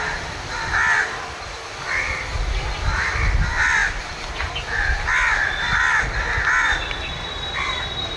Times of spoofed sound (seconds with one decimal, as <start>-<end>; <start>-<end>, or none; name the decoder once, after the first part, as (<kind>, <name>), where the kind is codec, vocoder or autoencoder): none